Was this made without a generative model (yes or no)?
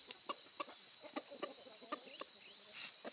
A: yes